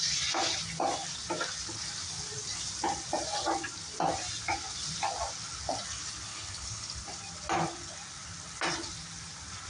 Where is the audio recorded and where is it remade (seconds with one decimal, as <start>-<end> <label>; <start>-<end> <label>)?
0.0-6.3 recorded; 6.3-7.0 remade; 7.0-9.7 recorded